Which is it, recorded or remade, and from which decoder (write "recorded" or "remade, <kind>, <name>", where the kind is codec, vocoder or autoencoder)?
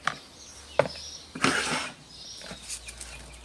recorded